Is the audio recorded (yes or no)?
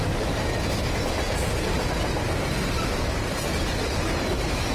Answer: yes